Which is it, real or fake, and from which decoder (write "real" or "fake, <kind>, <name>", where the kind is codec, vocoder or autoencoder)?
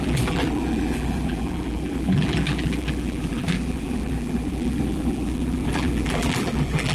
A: fake, vocoder, BigVGAN v2